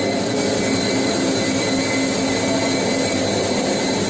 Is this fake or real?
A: fake